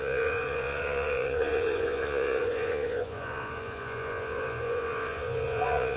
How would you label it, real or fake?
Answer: fake